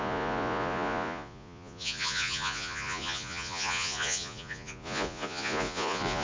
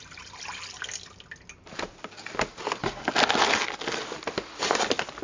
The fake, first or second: first